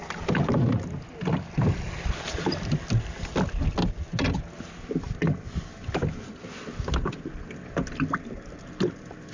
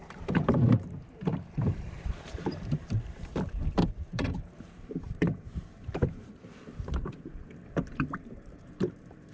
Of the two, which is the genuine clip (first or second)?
first